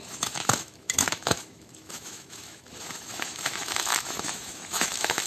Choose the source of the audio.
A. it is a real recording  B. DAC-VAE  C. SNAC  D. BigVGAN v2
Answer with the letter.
B